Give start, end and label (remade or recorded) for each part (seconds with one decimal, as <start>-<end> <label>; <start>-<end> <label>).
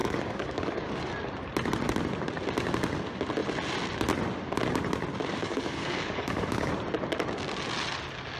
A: 0.0-1.1 remade; 1.1-5.4 recorded; 5.4-6.7 remade; 6.7-8.4 recorded